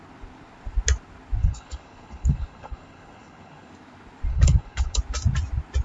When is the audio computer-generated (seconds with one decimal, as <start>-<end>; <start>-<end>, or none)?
1.4-3.7; 4.3-5.0